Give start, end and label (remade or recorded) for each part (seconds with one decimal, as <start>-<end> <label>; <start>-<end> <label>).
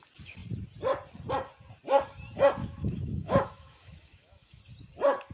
0.0-2.6 recorded; 2.6-4.6 remade; 4.6-5.3 recorded